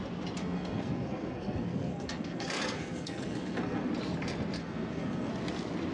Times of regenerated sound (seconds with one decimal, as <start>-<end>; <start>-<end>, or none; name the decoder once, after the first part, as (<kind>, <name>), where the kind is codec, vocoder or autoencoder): 0.4-3.9 (codec, SNAC); 4.6-5.3

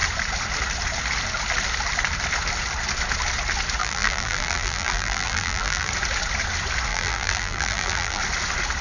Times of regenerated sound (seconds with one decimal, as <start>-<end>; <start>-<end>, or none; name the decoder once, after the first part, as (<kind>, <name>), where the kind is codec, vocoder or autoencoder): 3.8-5.9 (vocoder, BigVGAN v2); 6.9-8.2

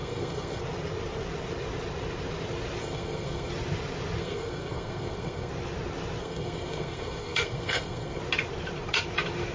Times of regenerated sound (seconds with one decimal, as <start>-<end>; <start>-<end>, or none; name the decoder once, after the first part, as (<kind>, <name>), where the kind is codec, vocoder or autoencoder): 0.0-0.6 (codec, SNAC); 2.8-3.5; 4.2-5.5; 6.2-8.2